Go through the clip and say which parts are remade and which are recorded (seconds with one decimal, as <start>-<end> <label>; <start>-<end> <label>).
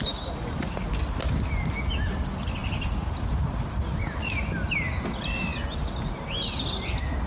0.0-7.3 recorded